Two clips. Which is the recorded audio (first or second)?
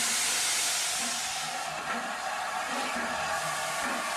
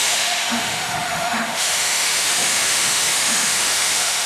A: first